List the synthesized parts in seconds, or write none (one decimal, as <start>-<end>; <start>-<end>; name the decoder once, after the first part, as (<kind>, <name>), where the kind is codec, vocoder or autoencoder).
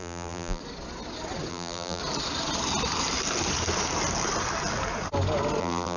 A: 0.0-0.6 (vocoder, BigVGAN v2); 1.5-2.0; 5.6-6.0